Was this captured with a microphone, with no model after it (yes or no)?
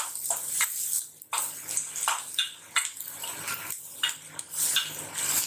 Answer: yes